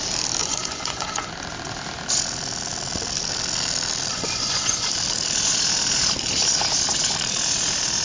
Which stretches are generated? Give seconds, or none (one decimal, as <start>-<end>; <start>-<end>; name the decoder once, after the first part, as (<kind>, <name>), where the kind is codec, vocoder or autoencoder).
0.4-1.3 (vocoder, Vocos); 4.1-4.9